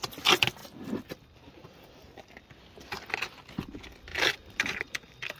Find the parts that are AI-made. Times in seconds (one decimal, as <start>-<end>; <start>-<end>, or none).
0.6-2.0; 4.1-5.4